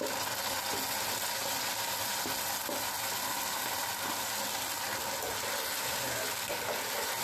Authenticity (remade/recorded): recorded